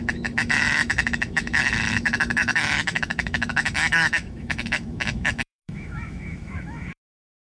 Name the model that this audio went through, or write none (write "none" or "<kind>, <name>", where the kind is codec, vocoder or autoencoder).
autoencoder, DAC-VAE